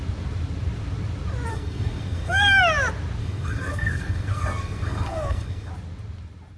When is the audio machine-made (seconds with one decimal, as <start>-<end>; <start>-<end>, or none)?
1.5-2.6; 3.2-5.7